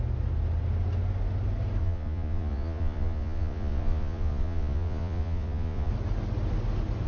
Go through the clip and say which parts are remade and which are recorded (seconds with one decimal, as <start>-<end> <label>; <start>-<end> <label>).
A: 0.0-1.8 recorded; 1.8-5.9 remade; 5.9-7.1 recorded